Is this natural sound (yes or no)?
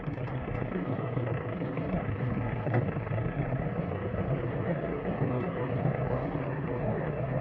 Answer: no